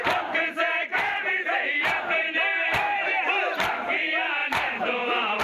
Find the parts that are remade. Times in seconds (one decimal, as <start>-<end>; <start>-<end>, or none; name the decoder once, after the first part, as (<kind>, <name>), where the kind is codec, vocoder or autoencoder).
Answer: 0.9-3.4 (vocoder, BigVGAN v2); 4.4-5.4